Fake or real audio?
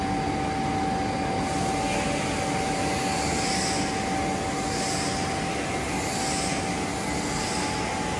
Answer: real